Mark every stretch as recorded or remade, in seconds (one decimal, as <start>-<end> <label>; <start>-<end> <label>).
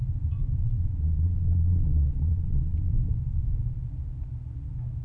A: 0.0-0.6 recorded; 0.6-2.9 remade; 2.9-5.0 recorded